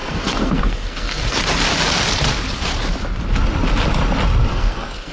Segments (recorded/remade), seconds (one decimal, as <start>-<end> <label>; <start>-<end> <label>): 0.0-1.4 remade; 1.4-4.5 recorded; 4.5-5.1 remade